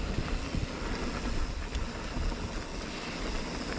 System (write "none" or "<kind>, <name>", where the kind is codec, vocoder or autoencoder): none